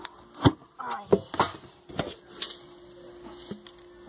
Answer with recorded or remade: recorded